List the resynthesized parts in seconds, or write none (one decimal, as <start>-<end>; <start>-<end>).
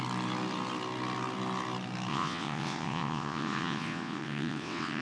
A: 2.1-5.0